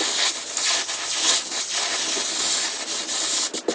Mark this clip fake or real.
real